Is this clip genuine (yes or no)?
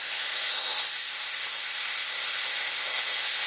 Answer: no